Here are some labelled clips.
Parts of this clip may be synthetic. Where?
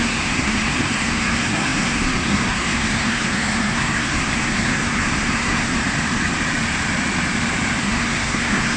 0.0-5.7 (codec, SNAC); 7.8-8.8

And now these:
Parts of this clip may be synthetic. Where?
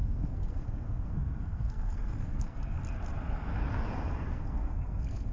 0.0-2.8 (codec, SNAC); 4.3-5.3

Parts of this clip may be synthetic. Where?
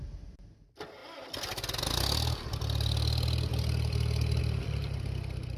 none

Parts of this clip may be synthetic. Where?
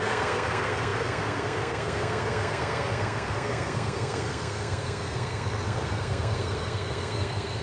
0.0-7.6 (codec, SNAC)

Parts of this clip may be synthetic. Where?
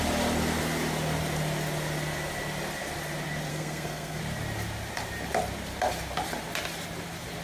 3.5-4.2 (codec, SNAC)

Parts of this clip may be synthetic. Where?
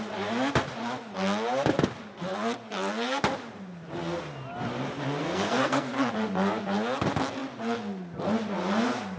5.2-5.9 (codec, SNAC)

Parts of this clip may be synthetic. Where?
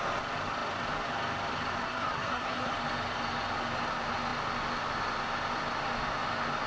1.8-2.7 (codec, SNAC)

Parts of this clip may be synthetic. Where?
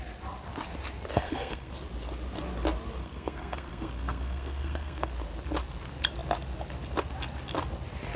1.1-1.7 (codec, SNAC); 3.0-5.1